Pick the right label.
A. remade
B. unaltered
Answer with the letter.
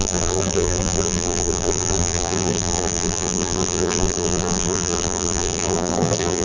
A